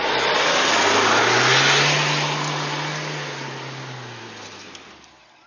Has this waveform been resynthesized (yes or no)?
no